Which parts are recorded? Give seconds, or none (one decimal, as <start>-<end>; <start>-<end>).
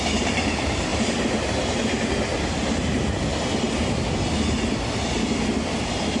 0.0-6.2